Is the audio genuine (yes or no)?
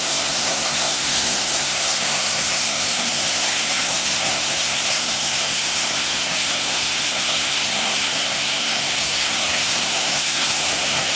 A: no